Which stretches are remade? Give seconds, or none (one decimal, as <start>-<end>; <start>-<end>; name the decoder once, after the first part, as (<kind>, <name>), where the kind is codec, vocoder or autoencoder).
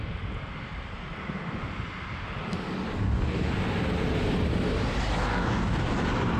3.0-3.5 (codec, DAC); 5.3-5.8